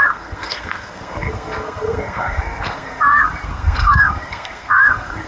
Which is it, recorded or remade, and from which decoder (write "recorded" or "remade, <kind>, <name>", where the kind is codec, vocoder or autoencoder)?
remade, codec, SNAC